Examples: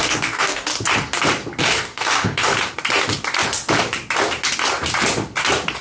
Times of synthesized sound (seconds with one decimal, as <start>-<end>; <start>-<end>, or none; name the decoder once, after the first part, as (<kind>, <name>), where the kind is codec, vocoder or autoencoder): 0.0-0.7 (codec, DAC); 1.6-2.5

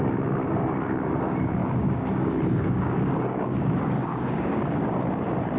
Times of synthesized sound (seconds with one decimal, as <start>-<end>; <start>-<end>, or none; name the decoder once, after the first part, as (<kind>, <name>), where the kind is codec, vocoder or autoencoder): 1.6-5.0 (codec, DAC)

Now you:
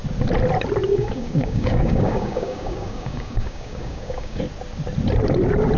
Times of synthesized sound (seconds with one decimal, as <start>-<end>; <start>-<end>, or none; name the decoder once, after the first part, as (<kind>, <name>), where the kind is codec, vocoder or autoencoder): 0.9-4.4 (codec, DAC)

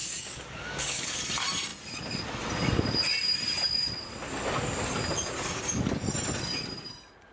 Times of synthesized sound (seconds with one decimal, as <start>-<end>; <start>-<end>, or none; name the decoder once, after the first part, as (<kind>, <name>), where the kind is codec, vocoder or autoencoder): 0.0-1.2 (codec, DAC)

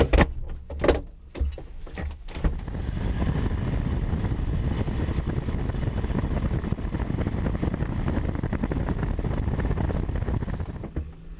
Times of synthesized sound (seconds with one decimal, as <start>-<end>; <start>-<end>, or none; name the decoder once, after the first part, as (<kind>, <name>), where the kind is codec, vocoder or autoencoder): none

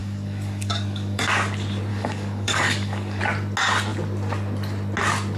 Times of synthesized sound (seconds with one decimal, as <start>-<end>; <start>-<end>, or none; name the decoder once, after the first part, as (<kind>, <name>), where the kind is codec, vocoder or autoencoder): 0.0-1.2 (codec, DAC); 1.9-3.2